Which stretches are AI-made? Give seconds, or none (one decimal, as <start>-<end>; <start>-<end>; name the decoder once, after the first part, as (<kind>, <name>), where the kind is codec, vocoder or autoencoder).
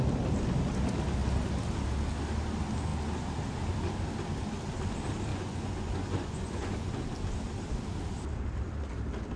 5.3-6.9 (vocoder, Vocos)